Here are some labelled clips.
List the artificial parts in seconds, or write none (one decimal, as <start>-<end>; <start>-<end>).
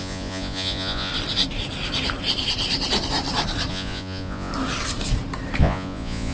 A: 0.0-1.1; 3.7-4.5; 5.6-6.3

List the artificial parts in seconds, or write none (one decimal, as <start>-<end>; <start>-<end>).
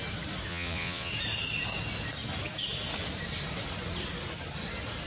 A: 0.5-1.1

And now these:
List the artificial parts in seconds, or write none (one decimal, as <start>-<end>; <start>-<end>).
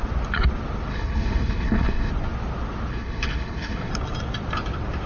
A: 0.9-2.1; 2.9-3.9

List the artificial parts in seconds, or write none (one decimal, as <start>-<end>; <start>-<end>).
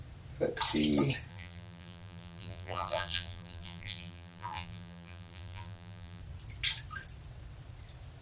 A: 1.3-6.2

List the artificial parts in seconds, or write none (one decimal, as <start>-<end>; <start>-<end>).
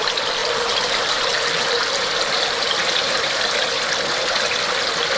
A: 0.4-3.5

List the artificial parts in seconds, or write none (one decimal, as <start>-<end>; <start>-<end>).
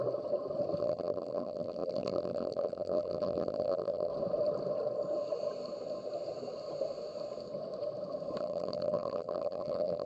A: 0.8-4.1; 8.4-10.1